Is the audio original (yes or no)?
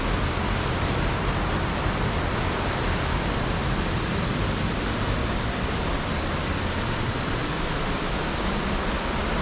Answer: yes